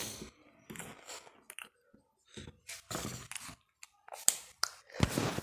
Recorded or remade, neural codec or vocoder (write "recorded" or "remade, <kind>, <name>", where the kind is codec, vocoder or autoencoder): recorded